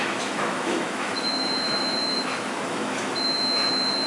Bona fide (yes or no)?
no